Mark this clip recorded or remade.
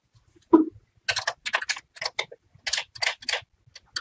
recorded